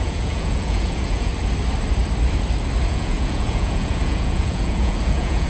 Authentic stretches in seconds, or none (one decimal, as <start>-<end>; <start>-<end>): 1.3-2.9